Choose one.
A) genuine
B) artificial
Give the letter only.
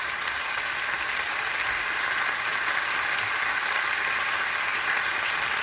A